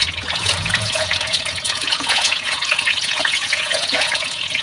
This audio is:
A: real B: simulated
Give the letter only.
B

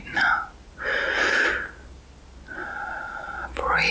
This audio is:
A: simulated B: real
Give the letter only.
B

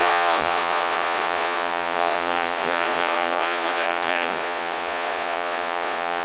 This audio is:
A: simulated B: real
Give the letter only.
A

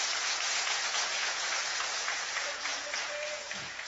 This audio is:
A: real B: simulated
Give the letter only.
B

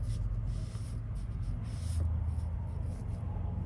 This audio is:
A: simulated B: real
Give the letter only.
B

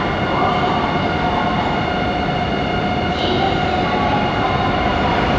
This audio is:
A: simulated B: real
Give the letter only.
B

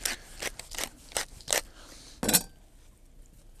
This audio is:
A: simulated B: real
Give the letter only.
B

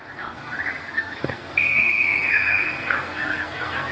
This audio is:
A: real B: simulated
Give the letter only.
B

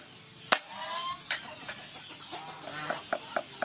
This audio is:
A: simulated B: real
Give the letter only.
B